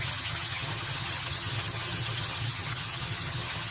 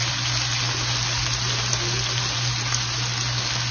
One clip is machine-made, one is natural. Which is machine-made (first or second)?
first